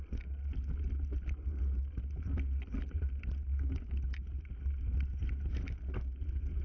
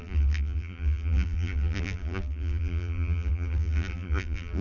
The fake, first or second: second